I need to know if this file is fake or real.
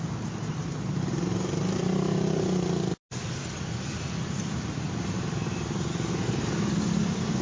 real